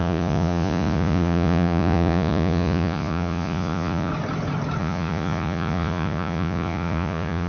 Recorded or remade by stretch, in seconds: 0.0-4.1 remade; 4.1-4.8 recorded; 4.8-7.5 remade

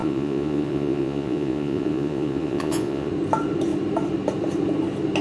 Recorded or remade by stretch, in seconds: 0.0-3.1 remade; 3.1-5.2 recorded

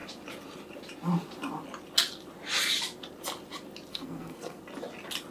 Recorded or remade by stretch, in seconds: 0.0-3.9 recorded; 3.9-4.6 remade; 4.6-5.3 recorded

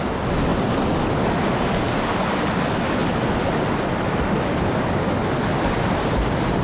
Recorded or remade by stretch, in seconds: 0.0-6.6 recorded

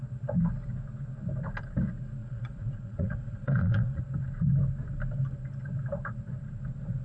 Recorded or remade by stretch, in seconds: 0.0-2.2 recorded; 2.2-4.0 remade; 4.0-7.0 recorded

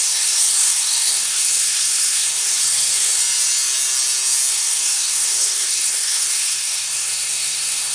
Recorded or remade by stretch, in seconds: 0.0-3.2 remade; 3.2-4.5 recorded; 4.5-7.9 remade

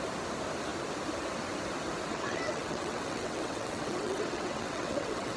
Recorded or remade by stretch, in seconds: 0.0-2.1 recorded; 2.1-5.4 remade